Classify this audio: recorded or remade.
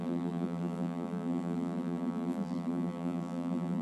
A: remade